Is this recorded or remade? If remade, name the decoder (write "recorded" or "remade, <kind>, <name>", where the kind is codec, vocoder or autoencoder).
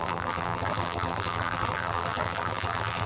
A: remade, vocoder, BigVGAN v2